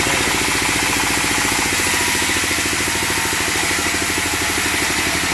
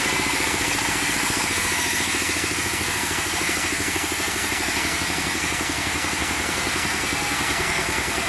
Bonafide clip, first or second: first